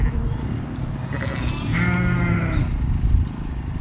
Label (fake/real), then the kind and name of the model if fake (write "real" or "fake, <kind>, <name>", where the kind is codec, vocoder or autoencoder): real